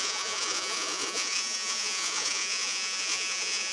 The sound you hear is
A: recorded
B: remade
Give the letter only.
B